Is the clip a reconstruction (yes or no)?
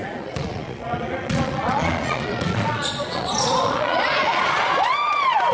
yes